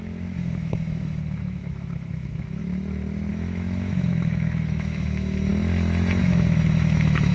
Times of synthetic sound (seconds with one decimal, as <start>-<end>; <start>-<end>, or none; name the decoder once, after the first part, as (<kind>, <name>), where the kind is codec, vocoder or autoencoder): 0.0-2.6 (autoencoder, DAC-VAE); 3.3-5.5; 6.2-7.3